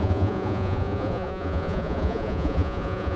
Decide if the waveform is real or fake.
fake